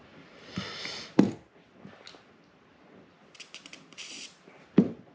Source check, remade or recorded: recorded